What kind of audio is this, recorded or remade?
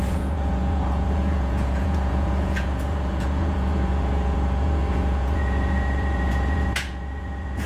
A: remade